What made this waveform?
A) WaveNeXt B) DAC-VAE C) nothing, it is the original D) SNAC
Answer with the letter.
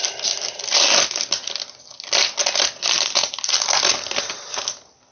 C